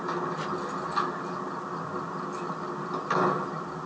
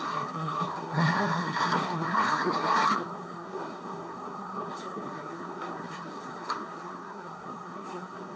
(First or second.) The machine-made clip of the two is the second